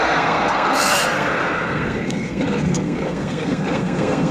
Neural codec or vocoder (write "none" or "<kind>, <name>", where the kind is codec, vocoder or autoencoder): codec, SNAC